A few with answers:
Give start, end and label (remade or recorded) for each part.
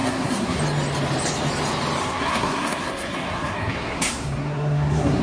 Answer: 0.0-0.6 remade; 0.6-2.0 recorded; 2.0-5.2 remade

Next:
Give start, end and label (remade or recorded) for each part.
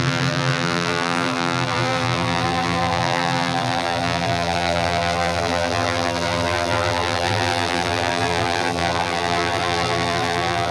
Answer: 0.0-10.7 remade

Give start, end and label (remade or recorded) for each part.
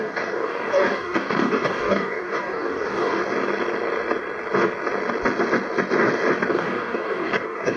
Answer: 0.0-3.2 remade; 3.2-6.5 recorded; 6.5-7.8 remade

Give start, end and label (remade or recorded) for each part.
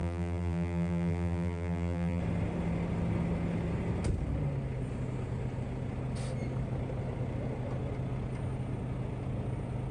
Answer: 0.0-2.2 remade; 2.2-9.9 recorded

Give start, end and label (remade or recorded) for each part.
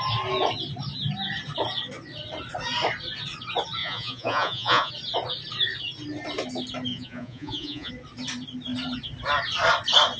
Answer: 0.0-3.8 recorded; 3.8-4.9 remade; 4.9-6.9 recorded; 6.9-7.9 remade; 7.9-10.2 recorded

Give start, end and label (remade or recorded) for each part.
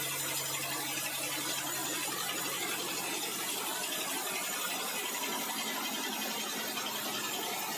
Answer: 0.0-7.8 recorded